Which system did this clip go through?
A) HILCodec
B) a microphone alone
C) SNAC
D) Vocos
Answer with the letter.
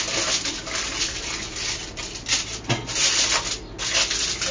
B